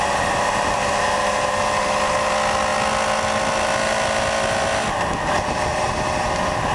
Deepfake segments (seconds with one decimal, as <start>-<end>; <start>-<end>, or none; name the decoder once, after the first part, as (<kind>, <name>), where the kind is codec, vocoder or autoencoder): none